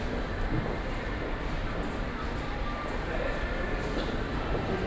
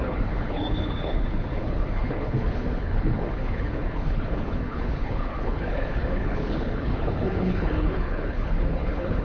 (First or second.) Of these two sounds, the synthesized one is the second